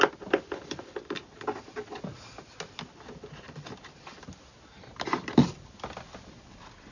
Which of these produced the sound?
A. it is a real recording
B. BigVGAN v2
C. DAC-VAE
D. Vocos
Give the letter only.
A